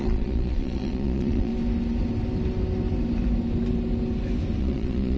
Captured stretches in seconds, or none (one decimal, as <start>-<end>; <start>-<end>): 1.5-4.6